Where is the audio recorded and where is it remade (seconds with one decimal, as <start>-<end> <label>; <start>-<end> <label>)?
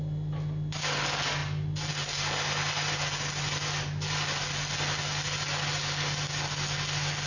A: 0.0-7.3 recorded